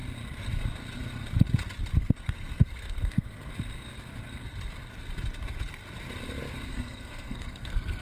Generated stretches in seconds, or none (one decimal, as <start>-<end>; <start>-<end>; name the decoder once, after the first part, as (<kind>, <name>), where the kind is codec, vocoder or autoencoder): 2.0-3.5 (codec, SNAC); 6.7-8.0